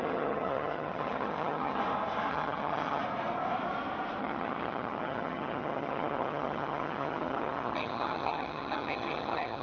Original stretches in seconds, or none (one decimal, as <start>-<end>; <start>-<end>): 1.8-2.3; 3.0-4.2